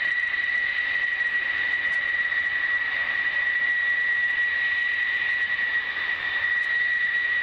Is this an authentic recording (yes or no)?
no